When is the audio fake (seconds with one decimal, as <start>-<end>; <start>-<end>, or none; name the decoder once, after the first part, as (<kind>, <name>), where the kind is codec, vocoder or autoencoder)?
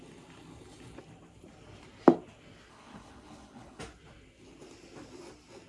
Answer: 2.7-3.8 (codec, HILCodec)